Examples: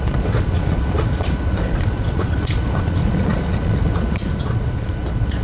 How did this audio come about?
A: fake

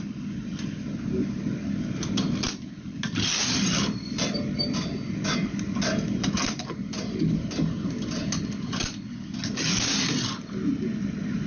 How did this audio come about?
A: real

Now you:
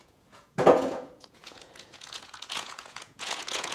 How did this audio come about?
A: fake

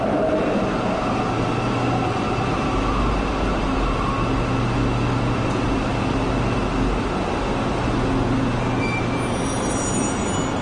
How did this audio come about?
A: real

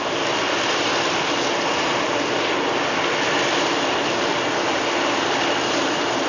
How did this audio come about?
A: real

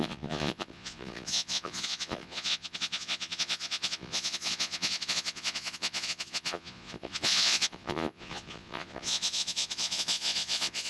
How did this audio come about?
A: fake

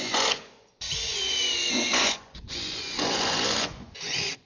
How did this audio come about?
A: fake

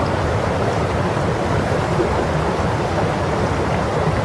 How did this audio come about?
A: real